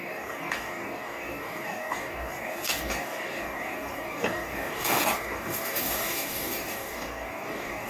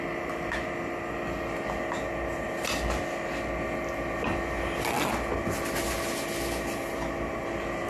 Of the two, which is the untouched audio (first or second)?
second